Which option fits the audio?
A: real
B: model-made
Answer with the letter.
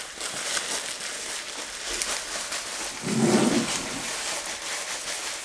A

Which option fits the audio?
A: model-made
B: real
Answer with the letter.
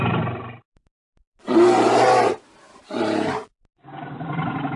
A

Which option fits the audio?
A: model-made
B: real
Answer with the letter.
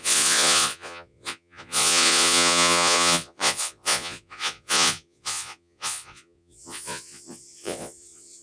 A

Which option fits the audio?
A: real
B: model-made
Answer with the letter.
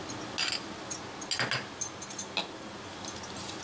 A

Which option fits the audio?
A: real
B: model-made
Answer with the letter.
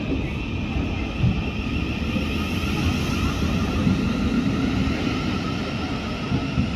A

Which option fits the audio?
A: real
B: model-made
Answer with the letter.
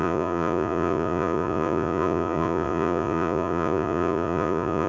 B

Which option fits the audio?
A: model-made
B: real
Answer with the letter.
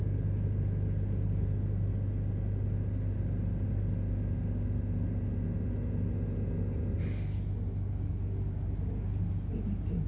B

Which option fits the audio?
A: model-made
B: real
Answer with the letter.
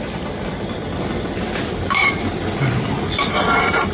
A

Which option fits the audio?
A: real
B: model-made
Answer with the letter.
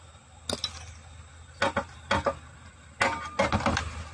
A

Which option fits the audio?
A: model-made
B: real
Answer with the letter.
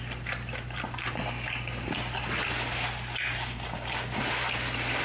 B